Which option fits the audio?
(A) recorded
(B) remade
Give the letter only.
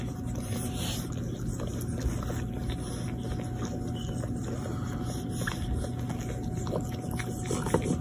A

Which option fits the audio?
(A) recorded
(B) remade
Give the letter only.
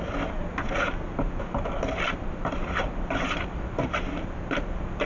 A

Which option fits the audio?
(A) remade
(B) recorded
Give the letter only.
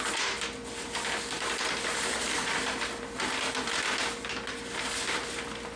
B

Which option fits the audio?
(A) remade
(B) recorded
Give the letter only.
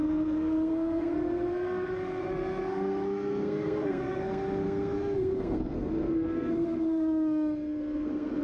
A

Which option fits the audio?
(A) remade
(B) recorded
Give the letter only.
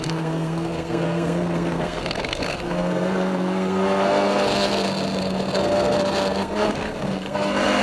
A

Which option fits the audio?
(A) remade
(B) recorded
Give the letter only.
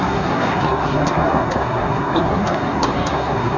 A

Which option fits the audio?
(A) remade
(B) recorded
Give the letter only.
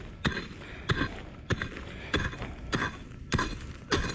B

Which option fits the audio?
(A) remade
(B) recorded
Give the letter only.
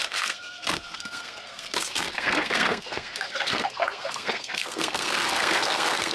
A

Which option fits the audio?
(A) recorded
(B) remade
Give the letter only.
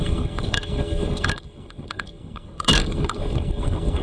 B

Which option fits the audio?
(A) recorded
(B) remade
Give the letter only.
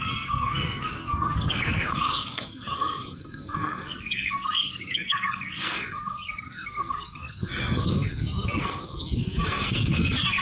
B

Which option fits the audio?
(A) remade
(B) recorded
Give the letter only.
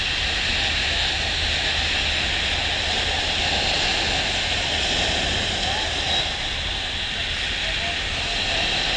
B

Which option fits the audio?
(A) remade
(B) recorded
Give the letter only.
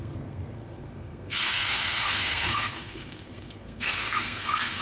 A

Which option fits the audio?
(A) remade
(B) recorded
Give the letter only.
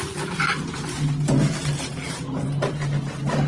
B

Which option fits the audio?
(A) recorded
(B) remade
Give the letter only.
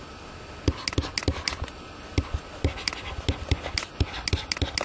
A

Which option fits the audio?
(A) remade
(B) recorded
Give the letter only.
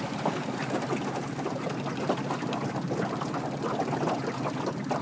B